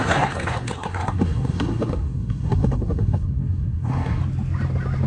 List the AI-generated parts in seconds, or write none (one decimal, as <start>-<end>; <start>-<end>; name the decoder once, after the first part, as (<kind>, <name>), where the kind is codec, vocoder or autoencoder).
0.0-4.2 (codec, SNAC)